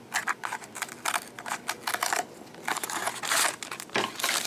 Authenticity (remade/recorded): recorded